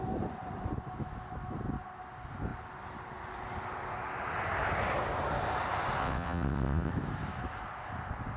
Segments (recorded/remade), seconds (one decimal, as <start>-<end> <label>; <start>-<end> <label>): 0.0-6.0 recorded; 6.0-6.9 remade; 6.9-8.4 recorded